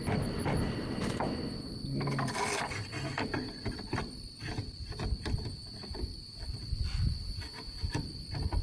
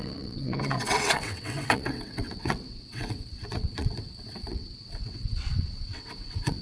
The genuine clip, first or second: first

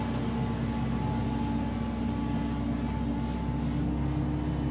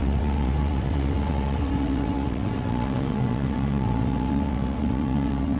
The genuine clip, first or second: first